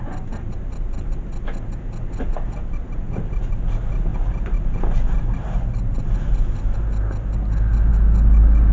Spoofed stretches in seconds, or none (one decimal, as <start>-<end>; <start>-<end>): none